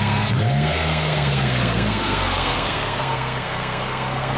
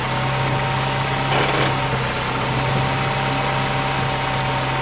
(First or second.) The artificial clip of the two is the first